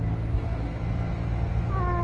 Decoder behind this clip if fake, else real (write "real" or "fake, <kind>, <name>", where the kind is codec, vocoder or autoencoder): real